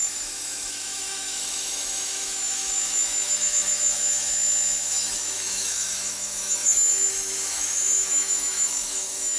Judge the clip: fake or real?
fake